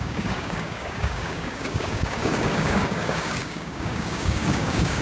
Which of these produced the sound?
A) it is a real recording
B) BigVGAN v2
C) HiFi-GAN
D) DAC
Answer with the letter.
D